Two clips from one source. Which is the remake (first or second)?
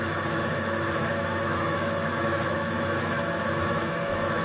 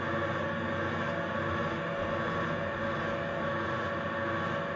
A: first